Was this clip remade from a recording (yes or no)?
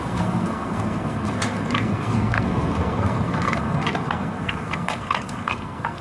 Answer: yes